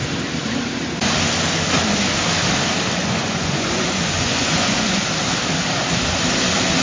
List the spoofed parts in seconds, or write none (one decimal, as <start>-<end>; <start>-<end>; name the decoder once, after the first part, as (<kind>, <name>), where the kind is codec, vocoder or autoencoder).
3.0-5.0 (vocoder, Vocos)